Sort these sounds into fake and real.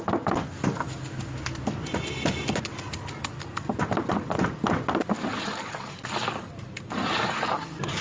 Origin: real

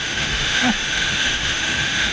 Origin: fake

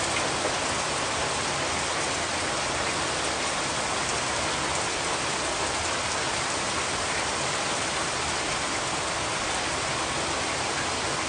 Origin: real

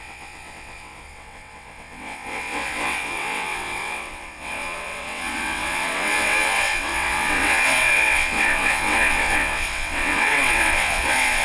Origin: fake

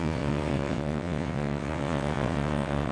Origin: fake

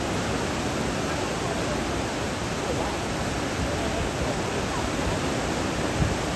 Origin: real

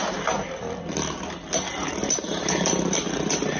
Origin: real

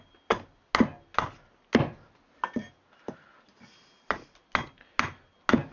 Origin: real